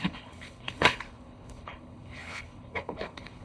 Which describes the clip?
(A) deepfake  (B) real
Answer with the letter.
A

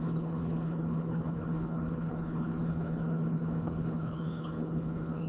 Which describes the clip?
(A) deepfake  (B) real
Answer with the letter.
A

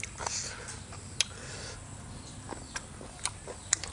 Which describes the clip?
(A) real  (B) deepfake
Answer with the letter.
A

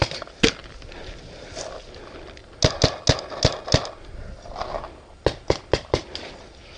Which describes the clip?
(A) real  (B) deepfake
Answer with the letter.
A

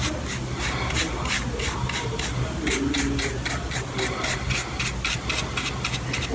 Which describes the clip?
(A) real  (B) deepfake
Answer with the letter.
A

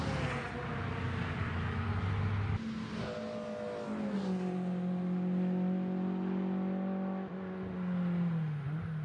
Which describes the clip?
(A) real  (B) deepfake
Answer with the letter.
A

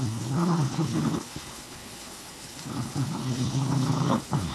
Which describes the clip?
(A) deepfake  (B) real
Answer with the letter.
A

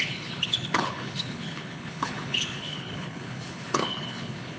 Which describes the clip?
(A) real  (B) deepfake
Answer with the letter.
B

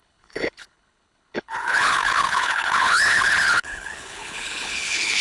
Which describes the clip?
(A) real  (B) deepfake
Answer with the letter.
B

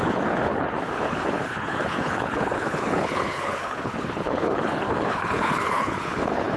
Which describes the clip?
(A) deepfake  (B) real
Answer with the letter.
A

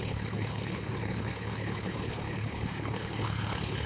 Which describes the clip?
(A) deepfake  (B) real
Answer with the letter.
A